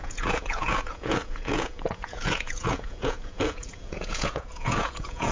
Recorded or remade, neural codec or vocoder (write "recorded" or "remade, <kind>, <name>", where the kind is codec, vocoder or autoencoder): remade, vocoder, Vocos